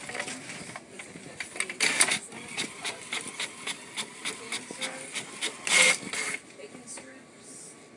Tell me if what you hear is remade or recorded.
recorded